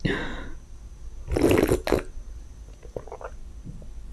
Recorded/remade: recorded